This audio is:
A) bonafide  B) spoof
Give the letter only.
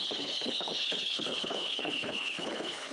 B